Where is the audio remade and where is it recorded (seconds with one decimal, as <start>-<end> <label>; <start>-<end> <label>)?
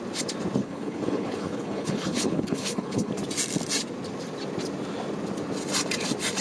0.0-0.6 recorded; 0.6-3.1 remade; 3.1-6.4 recorded